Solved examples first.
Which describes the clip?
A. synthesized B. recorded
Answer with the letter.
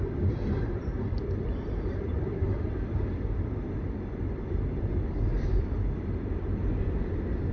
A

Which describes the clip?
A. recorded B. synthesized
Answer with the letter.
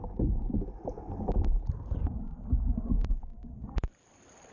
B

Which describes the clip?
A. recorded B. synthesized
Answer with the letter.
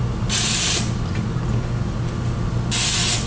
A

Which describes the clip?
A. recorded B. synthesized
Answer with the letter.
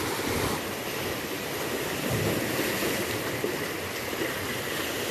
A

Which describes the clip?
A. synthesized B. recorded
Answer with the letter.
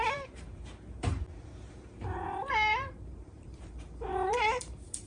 A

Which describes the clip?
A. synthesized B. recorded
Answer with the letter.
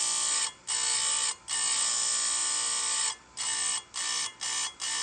A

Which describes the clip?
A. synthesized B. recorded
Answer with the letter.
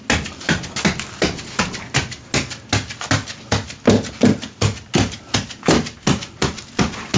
B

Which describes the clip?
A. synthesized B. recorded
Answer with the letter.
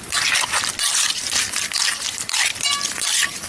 A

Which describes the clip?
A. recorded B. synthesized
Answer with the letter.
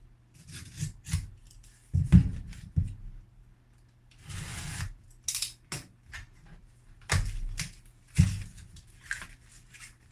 A